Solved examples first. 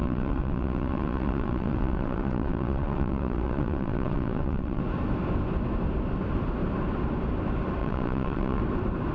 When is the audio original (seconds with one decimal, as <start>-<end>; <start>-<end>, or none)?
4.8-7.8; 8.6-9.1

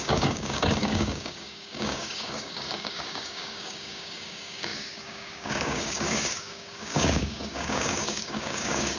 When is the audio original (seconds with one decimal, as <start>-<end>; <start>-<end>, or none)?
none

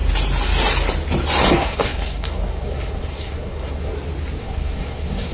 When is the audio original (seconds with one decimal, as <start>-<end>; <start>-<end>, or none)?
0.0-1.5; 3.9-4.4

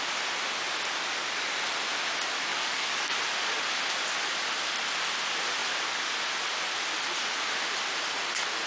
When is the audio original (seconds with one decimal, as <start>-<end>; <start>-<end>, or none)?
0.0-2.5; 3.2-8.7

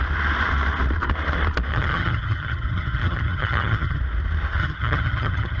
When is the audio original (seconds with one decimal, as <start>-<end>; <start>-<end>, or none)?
0.0-1.7; 4.0-4.6

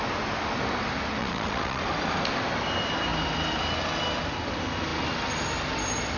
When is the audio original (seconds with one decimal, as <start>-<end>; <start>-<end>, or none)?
0.0-1.2; 1.8-6.2